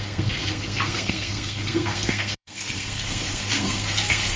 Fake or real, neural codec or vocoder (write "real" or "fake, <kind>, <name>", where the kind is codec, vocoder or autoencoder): fake, codec, SNAC